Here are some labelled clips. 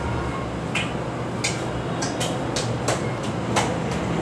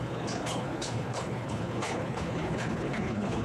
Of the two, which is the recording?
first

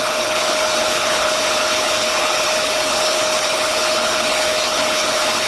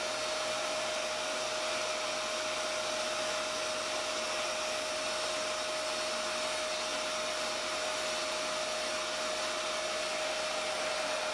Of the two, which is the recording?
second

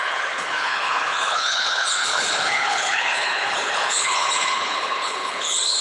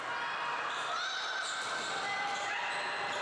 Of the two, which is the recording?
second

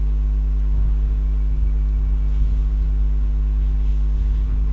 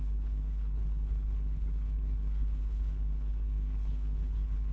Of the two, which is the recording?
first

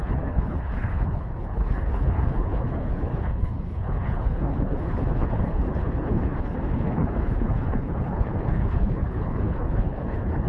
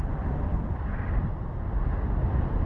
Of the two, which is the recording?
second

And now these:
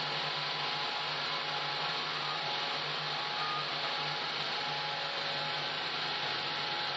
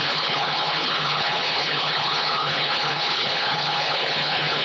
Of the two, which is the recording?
first